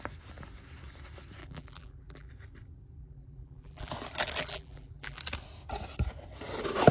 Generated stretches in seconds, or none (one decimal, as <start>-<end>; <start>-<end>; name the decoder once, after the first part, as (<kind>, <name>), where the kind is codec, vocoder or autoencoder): 1.4-2.3 (vocoder, BigVGAN v2); 3.0-3.9; 4.4-5.2